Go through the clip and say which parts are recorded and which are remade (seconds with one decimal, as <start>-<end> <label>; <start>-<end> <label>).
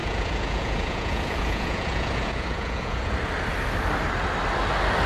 0.0-3.1 remade; 3.1-5.1 recorded